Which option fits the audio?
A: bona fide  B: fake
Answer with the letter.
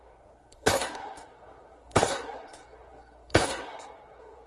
B